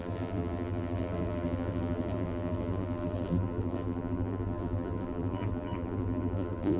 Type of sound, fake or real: fake